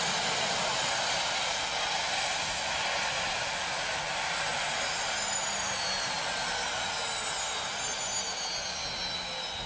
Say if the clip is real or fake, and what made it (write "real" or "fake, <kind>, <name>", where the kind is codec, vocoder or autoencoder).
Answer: real